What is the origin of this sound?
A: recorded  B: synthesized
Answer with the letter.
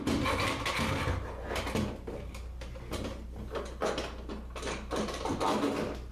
A